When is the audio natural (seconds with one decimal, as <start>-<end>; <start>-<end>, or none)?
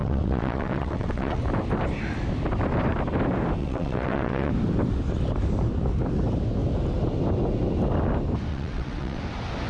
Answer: 1.4-3.6; 4.5-8.5; 9.2-9.7